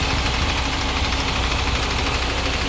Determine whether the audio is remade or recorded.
recorded